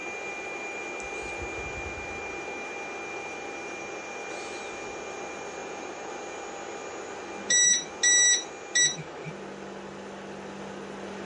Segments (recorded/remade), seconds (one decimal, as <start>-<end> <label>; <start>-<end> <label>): 0.0-5.6 recorded; 5.6-6.1 remade; 6.1-11.3 recorded